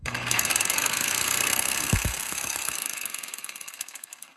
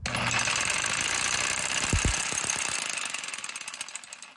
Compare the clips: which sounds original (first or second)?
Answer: second